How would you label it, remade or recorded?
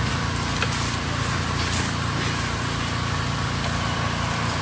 recorded